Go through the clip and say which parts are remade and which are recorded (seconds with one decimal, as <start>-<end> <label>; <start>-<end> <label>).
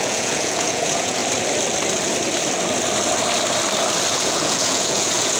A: 0.0-1.2 remade; 1.2-4.1 recorded; 4.1-5.4 remade